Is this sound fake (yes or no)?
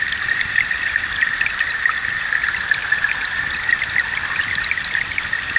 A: yes